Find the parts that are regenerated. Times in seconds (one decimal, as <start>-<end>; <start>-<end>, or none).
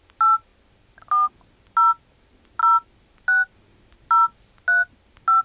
none